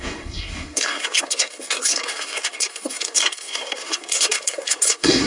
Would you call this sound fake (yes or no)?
yes